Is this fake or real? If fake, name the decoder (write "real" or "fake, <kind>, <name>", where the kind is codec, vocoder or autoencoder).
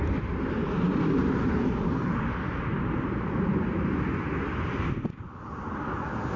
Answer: real